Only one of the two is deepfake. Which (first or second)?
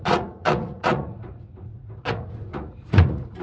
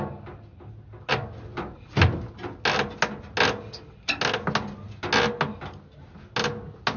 first